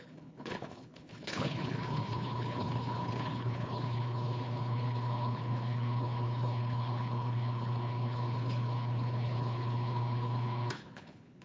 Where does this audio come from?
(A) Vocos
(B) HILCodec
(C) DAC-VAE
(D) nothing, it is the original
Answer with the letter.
B